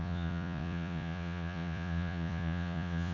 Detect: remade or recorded remade